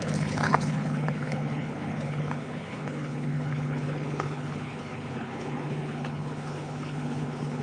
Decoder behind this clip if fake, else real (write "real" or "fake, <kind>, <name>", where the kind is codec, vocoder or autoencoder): fake, codec, HILCodec